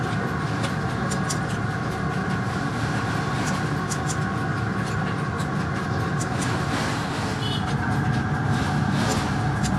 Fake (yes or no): no